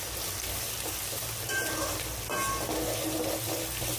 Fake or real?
real